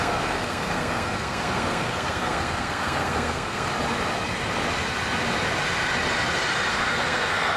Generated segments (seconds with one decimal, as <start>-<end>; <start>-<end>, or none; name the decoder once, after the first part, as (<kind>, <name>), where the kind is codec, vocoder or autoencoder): 0.0-3.7 (codec, SNAC); 6.7-7.6